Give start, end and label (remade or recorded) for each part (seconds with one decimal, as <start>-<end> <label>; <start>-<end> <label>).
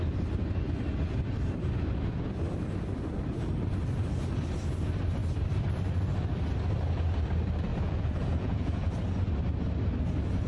0.0-7.7 recorded; 7.7-8.9 remade; 8.9-10.5 recorded